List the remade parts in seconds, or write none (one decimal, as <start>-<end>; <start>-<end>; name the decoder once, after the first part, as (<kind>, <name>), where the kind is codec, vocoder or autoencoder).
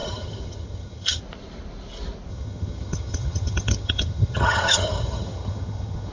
0.0-1.2 (vocoder, HiFi-GAN); 2.3-6.1